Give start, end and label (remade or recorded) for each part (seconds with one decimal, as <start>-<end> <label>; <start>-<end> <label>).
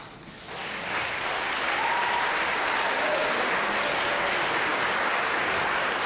0.0-6.1 recorded